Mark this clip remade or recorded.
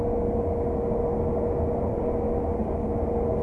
recorded